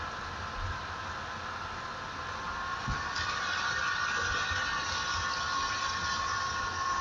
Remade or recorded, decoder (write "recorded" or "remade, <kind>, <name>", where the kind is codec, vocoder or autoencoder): recorded